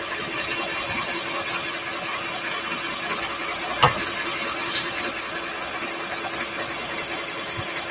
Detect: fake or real real